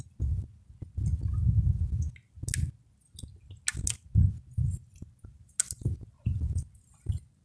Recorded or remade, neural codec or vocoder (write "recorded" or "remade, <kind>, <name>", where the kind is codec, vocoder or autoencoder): recorded